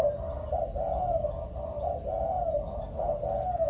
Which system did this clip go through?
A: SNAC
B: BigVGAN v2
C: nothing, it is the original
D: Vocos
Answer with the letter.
C